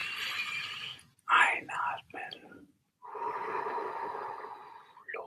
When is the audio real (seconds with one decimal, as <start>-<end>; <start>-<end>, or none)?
0.0-5.3